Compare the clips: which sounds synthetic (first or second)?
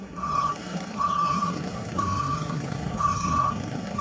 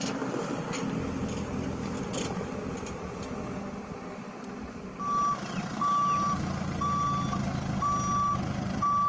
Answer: first